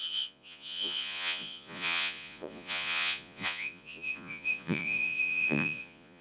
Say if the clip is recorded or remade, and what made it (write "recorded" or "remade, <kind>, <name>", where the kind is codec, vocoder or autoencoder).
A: remade, vocoder, Vocos